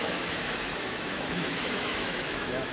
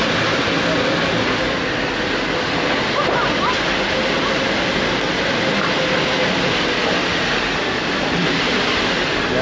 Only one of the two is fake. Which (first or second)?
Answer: first